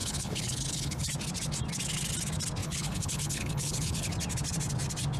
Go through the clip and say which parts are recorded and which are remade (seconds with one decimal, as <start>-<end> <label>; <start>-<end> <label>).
0.0-1.1 remade; 1.1-2.6 recorded; 2.6-4.1 remade; 4.1-5.2 recorded